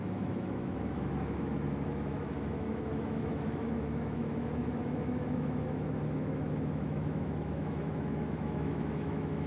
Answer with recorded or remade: remade